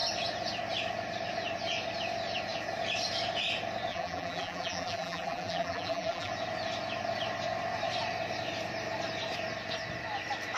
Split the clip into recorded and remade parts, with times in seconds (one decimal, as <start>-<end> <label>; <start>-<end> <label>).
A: 0.0-3.9 recorded; 3.9-6.3 remade; 6.3-10.6 recorded

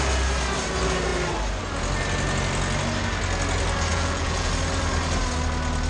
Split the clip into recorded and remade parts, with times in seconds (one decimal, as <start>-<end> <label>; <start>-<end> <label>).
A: 0.0-3.9 recorded; 3.9-4.5 remade; 4.5-5.9 recorded

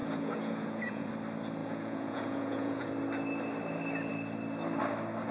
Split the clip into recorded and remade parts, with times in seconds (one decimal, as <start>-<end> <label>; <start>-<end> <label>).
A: 0.0-1.1 remade; 1.1-1.6 recorded; 1.6-2.9 remade; 2.9-5.3 recorded

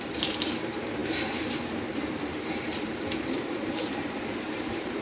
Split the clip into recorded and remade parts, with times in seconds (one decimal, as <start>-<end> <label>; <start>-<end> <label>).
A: 0.0-5.0 remade

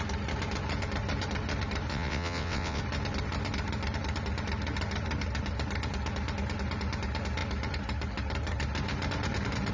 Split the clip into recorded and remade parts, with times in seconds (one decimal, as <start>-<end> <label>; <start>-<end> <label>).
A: 0.0-1.9 recorded; 1.9-2.8 remade; 2.8-9.7 recorded

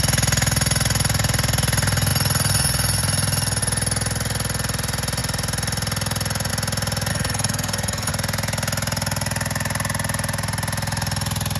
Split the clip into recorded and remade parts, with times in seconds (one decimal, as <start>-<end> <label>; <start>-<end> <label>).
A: 0.0-7.1 recorded; 7.1-8.1 remade; 8.1-11.6 recorded

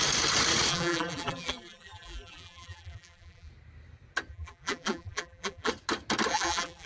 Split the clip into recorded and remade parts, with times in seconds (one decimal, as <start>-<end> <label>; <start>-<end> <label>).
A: 0.0-0.7 recorded; 0.7-3.5 remade; 3.5-4.3 recorded; 4.3-5.7 remade; 5.7-6.3 recorded; 6.3-6.9 remade